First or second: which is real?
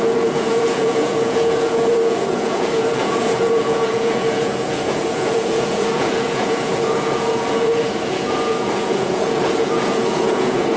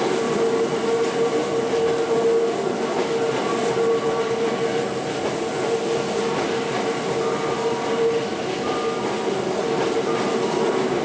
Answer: second